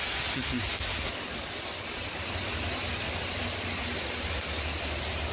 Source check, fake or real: real